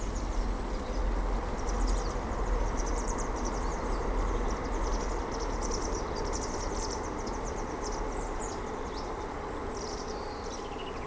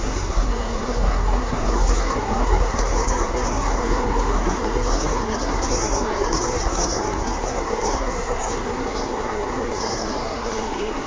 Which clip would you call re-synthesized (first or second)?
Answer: second